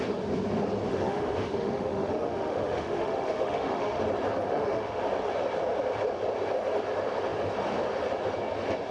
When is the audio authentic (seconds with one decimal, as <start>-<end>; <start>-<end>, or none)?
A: 0.0-0.9; 4.0-4.5; 5.0-8.9